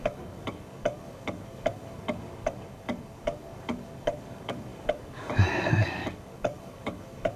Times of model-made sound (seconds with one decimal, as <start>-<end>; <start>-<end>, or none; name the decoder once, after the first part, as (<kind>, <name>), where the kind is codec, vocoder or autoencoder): 0.0-7.4 (codec, DAC)